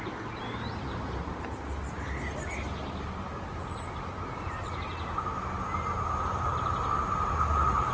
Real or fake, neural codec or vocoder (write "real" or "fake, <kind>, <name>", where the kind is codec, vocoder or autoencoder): real